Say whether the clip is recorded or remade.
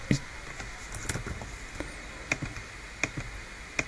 recorded